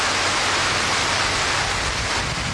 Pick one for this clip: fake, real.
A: real